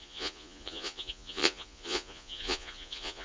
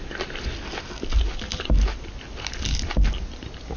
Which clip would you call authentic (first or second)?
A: second